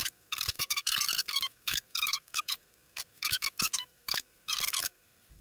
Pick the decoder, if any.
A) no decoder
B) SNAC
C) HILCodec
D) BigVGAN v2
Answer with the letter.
B